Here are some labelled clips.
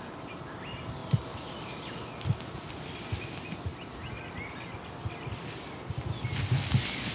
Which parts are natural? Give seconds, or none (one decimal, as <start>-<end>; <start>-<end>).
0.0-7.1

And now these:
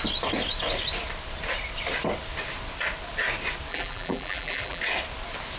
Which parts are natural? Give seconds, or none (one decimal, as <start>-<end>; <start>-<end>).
0.0-3.7; 4.8-5.6

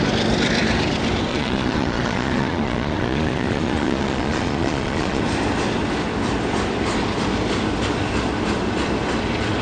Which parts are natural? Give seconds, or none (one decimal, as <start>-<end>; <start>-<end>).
0.0-1.3; 5.2-9.6

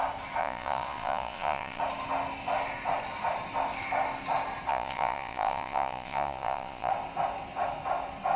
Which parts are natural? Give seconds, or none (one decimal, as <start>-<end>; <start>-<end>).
0.0-0.4; 1.8-4.7; 6.9-8.4

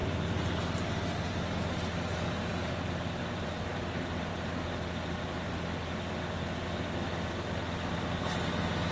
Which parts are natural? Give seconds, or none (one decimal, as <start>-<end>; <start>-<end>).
1.4-2.5; 3.7-8.9

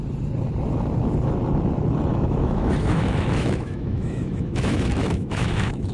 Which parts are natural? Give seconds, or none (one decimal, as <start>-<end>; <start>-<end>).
0.0-2.1